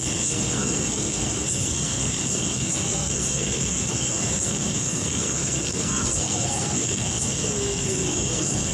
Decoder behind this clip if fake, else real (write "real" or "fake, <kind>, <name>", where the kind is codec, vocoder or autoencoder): fake, codec, SNAC